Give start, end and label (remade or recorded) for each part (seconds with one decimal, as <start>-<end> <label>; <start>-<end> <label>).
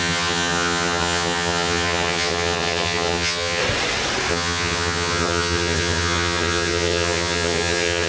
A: 0.0-3.6 remade; 3.6-4.3 recorded; 4.3-8.1 remade